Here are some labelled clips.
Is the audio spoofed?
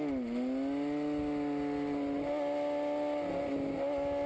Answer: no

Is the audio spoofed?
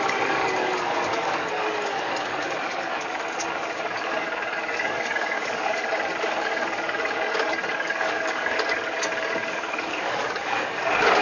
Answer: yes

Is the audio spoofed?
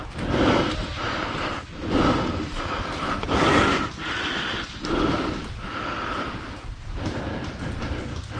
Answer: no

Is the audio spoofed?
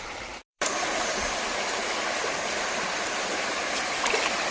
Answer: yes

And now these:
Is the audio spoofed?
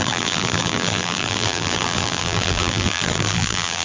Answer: yes